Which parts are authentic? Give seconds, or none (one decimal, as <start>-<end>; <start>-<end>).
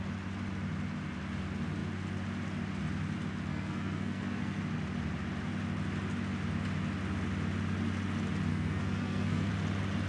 0.0-3.5; 4.6-8.5; 9.5-10.1